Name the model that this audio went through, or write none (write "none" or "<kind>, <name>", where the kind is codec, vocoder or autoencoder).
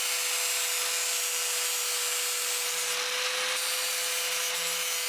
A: none